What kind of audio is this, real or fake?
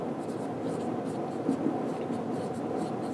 real